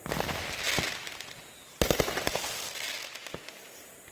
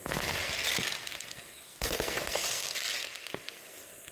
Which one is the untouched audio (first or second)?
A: first